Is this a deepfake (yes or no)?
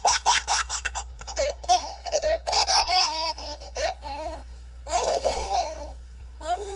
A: yes